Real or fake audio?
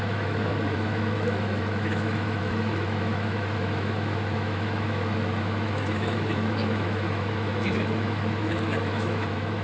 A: fake